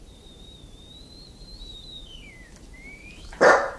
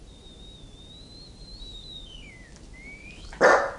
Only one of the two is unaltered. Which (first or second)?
second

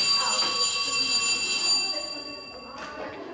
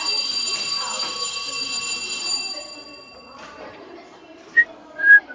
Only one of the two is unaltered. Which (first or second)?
first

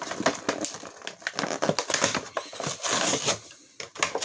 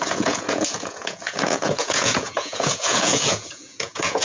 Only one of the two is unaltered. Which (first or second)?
first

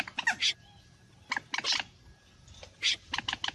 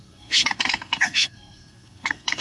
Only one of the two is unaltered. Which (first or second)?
first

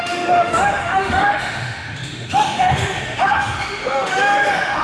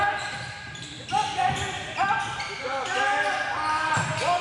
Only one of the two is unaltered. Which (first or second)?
second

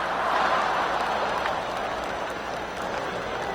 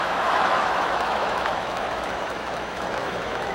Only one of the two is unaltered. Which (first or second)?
first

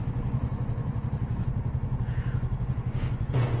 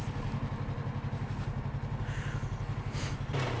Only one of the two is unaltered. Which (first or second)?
second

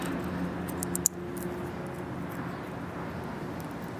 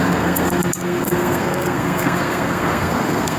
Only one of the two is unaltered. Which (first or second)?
first